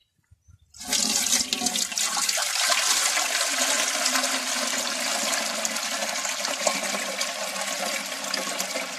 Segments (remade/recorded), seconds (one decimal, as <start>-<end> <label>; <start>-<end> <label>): 0.0-1.4 remade; 1.4-2.4 recorded; 2.4-3.7 remade; 3.7-9.0 recorded